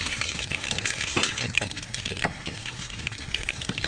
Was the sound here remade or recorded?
remade